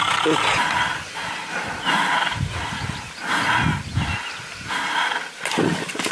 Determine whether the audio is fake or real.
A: real